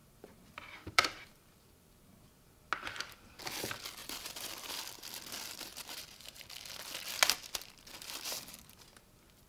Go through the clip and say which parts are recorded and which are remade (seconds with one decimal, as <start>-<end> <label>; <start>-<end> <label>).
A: 0.0-2.4 remade; 2.4-4.0 recorded; 4.0-4.8 remade; 4.8-5.7 recorded; 5.7-6.5 remade; 6.5-9.5 recorded